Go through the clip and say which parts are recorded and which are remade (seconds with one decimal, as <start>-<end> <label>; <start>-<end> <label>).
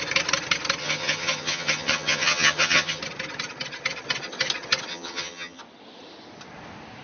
0.0-0.8 recorded; 0.8-3.0 remade; 3.0-4.9 recorded; 4.9-5.6 remade; 5.6-7.0 recorded